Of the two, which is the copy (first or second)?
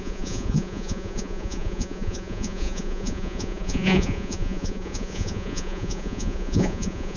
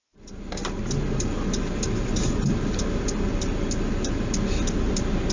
first